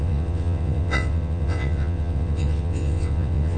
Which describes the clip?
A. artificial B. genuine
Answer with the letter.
A